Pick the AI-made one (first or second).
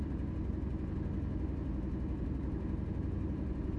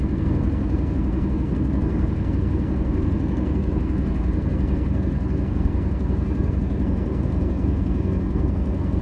second